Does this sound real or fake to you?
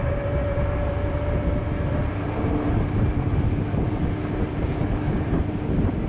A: fake